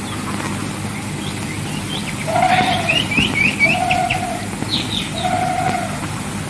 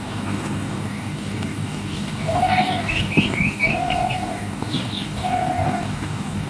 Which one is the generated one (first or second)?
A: second